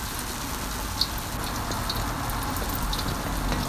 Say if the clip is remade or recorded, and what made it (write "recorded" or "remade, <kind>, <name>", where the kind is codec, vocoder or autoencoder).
recorded